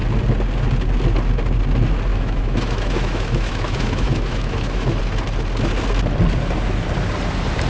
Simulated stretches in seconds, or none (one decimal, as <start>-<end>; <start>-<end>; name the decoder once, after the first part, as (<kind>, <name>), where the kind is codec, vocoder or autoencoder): 2.1-5.0 (autoencoder, DAC-VAE)